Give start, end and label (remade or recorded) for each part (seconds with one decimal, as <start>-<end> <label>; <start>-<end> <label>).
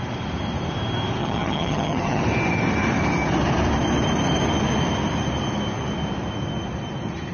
0.0-1.2 recorded; 1.2-2.2 remade; 2.2-7.3 recorded